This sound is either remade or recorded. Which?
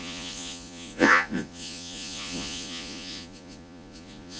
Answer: remade